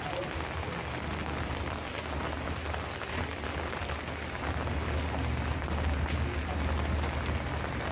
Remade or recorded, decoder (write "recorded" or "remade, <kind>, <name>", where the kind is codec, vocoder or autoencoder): recorded